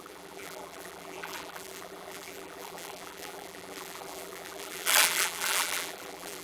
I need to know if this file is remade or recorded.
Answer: remade